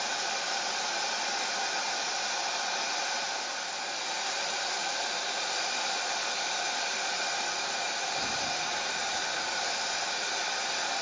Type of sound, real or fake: real